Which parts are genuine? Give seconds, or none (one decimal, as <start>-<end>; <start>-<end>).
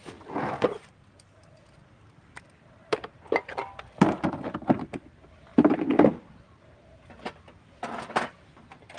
0.0-9.0